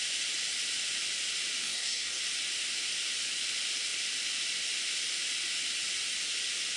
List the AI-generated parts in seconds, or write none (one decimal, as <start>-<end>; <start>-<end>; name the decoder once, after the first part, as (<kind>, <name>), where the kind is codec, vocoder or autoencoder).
1.6-2.2 (codec, DAC)

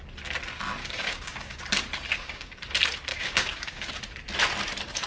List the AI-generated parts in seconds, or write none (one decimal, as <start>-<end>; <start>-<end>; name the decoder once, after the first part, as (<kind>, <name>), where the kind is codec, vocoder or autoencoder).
0.8-1.6 (codec, DAC); 2.1-2.6; 3.1-3.9

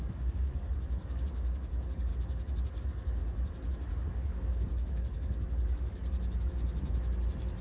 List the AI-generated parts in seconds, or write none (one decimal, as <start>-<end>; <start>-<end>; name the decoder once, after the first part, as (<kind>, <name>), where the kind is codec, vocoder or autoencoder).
0.0-2.1 (codec, DAC); 2.8-3.2; 4.1-6.0

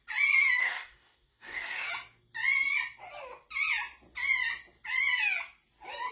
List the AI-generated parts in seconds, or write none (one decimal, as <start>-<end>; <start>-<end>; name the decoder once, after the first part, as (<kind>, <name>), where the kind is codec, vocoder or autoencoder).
0.6-1.9 (codec, DAC)